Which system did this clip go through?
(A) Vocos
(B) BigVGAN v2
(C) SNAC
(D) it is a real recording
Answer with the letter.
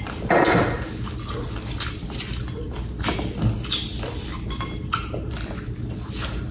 D